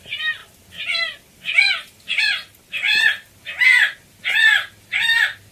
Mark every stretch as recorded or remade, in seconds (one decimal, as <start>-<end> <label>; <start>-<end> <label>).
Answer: 0.0-5.5 recorded